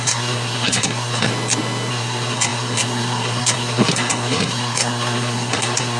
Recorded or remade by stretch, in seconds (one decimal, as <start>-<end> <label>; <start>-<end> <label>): 0.0-1.3 remade; 1.3-1.9 recorded; 1.9-6.0 remade